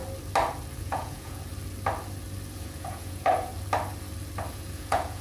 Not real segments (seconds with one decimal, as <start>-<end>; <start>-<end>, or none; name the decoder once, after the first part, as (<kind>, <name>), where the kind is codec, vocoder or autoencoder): 0.8-1.5 (vocoder, Vocos); 2.5-3.5; 4.5-5.2